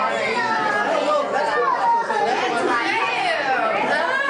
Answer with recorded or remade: recorded